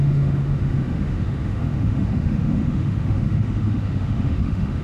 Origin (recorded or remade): remade